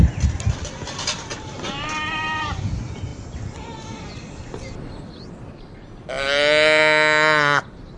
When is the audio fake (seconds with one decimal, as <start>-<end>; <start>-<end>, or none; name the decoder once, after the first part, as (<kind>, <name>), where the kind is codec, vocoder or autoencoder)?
0.0-1.3 (vocoder, BigVGAN v2); 2.1-3.1